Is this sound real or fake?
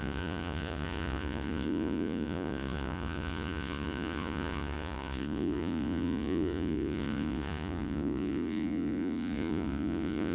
fake